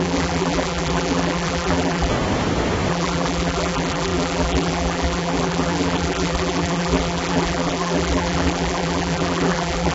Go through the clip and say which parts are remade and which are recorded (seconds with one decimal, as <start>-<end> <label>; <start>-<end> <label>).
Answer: 0.0-2.1 remade; 2.1-2.9 recorded; 2.9-9.9 remade